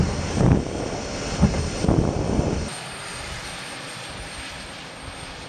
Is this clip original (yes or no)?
yes